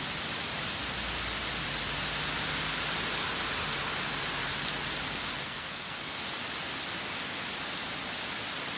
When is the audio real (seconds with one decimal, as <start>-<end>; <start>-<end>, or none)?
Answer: 0.0-5.4; 6.2-8.8